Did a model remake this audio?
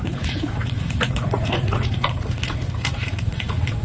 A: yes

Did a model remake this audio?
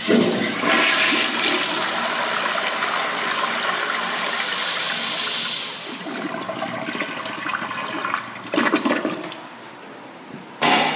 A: no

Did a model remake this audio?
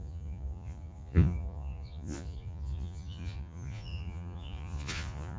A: yes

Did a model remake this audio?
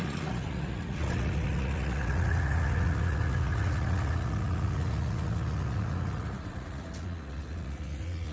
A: yes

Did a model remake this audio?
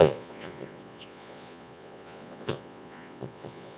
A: yes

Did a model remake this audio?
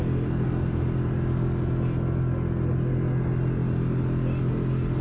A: no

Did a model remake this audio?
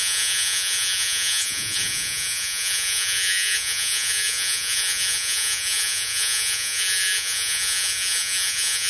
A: yes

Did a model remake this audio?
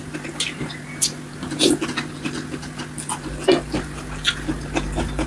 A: no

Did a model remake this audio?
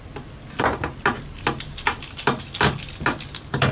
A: no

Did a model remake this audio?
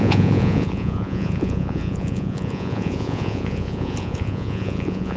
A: yes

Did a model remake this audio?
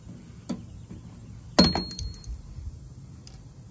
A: no